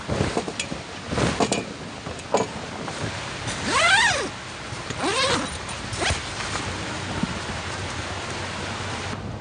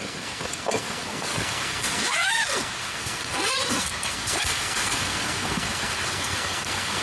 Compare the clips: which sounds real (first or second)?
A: first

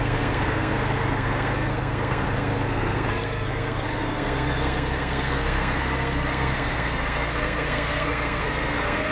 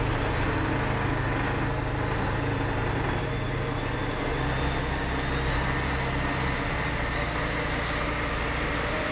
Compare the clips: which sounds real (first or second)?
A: second